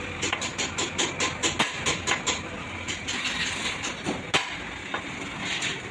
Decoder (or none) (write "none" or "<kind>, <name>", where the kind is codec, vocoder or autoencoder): none